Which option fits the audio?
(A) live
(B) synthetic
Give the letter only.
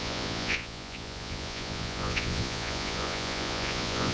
B